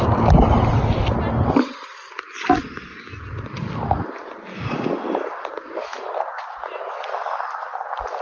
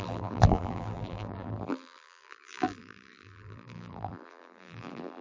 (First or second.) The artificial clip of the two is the second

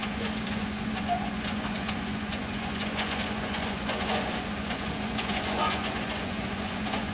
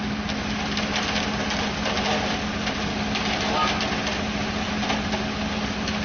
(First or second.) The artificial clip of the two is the first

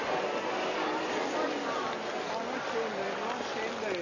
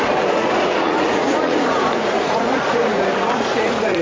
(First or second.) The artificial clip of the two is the second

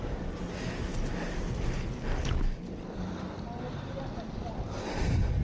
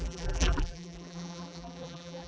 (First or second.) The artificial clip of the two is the second